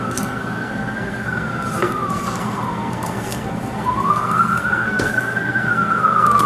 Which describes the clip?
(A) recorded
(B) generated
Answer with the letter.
B